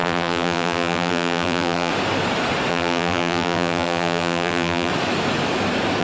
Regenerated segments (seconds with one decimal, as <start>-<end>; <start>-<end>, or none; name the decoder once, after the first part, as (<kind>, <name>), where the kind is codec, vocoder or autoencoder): 0.0-1.9 (vocoder, BigVGAN v2); 2.7-4.9

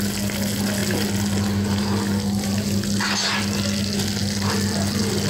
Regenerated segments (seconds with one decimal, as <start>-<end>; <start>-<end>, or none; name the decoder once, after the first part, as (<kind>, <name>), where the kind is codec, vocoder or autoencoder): none

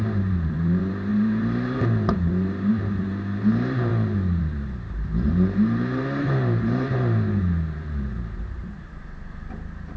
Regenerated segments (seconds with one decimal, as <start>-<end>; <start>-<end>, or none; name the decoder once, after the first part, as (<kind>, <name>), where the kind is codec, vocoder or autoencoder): 0.0-3.9 (vocoder, BigVGAN v2); 4.4-10.0

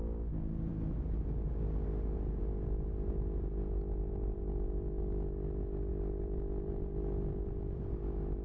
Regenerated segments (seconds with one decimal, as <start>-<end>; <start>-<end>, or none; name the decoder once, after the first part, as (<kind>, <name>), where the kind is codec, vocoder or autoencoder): 5.9-7.8 (vocoder, BigVGAN v2)

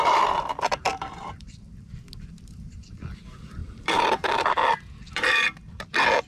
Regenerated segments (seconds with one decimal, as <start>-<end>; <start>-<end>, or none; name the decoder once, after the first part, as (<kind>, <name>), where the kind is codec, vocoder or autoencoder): 0.9-1.9 (vocoder, BigVGAN v2); 3.6-5.7

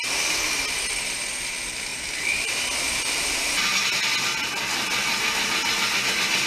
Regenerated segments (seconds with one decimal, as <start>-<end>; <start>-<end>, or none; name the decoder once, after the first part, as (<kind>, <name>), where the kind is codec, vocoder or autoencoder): 1.9-3.6 (vocoder, BigVGAN v2)